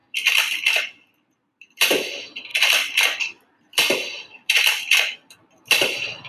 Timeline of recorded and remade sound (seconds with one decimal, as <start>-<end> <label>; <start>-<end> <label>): 0.0-6.3 remade